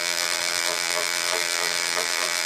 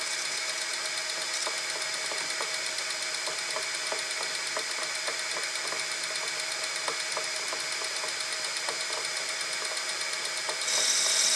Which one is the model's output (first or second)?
first